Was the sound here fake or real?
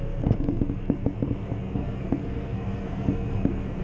fake